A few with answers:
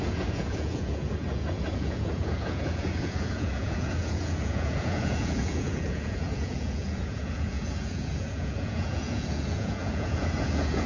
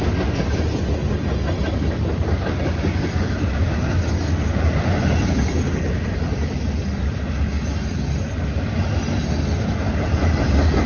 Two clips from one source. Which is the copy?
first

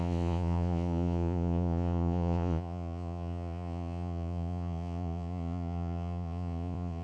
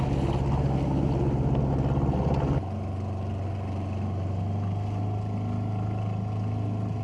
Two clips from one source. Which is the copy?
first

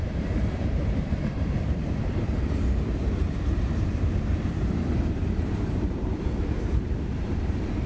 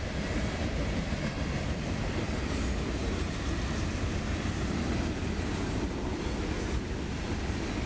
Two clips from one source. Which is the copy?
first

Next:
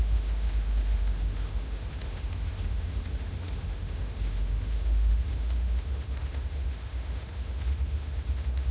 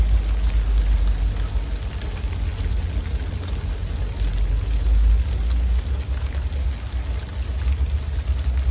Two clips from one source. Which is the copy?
first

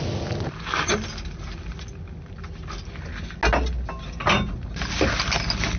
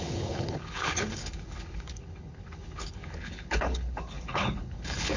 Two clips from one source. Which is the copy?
second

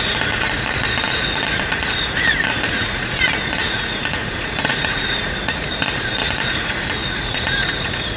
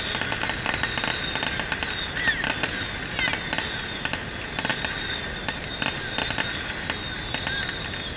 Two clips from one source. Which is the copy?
first